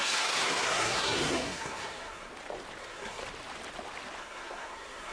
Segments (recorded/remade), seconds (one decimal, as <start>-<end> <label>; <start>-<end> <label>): 0.0-2.3 remade; 2.3-2.8 recorded; 2.8-3.2 remade; 3.2-4.2 recorded; 4.2-5.1 remade